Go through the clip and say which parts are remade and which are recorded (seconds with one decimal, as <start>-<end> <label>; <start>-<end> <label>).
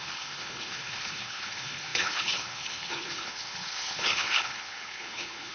0.0-5.5 remade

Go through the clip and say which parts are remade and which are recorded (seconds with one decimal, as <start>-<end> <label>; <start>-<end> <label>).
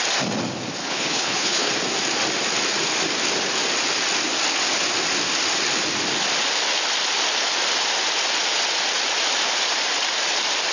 0.0-0.8 recorded; 0.8-1.7 remade; 1.7-10.7 recorded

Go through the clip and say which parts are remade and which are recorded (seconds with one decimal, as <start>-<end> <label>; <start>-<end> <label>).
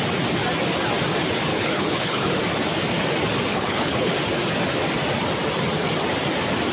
0.0-1.5 recorded; 1.5-2.4 remade; 2.4-3.5 recorded; 3.5-4.1 remade; 4.1-6.7 recorded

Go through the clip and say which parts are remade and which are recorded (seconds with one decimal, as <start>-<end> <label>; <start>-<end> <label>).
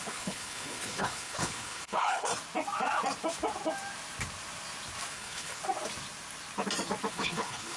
0.0-2.3 remade; 2.3-5.1 recorded; 5.1-5.6 remade; 5.6-7.1 recorded; 7.1-7.8 remade